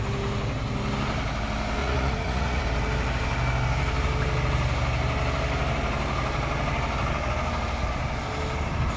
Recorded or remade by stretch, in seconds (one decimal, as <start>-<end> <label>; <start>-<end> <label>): 0.0-1.8 recorded; 1.8-2.6 remade; 2.6-9.0 recorded